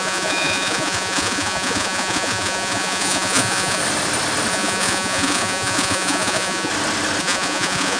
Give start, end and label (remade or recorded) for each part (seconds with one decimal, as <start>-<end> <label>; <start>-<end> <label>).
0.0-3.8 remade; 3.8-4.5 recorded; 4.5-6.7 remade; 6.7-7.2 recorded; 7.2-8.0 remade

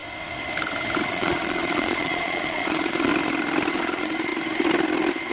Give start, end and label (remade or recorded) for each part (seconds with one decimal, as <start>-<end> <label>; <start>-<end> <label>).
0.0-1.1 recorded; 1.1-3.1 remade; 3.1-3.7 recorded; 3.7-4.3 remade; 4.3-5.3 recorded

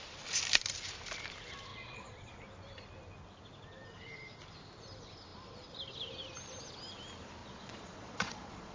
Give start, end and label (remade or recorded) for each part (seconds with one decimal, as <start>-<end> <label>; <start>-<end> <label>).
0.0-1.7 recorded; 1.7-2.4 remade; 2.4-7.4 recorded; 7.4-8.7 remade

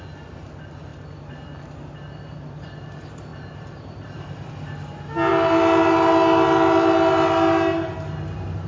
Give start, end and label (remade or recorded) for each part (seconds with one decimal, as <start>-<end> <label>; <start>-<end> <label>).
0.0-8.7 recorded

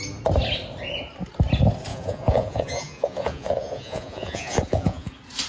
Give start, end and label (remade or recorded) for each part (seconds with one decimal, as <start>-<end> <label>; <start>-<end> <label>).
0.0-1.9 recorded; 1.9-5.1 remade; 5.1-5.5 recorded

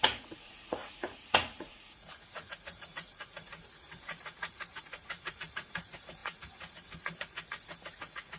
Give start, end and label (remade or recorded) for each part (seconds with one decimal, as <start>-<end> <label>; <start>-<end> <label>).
0.0-8.4 remade

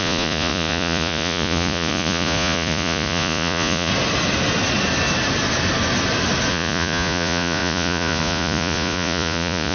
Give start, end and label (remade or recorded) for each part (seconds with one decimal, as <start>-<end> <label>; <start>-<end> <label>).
0.0-3.9 remade; 3.9-6.5 recorded; 6.5-9.7 remade

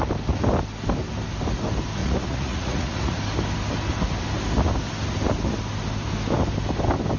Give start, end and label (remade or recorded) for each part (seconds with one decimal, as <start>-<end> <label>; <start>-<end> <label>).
0.0-2.0 recorded; 2.0-3.2 remade; 3.2-7.2 recorded